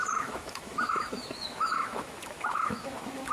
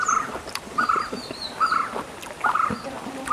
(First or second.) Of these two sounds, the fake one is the first